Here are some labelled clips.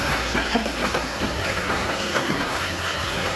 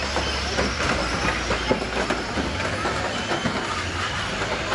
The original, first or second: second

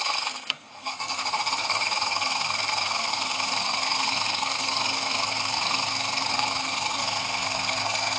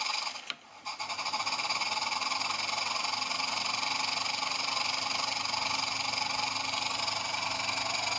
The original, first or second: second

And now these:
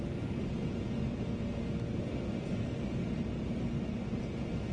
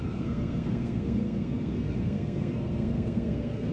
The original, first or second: first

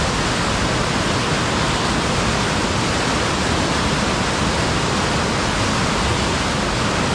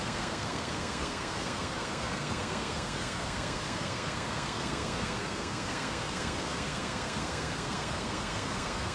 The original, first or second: first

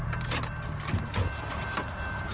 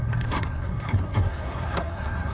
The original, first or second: first